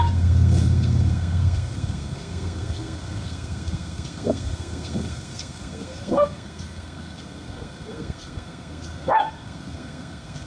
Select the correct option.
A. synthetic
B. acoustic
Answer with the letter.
A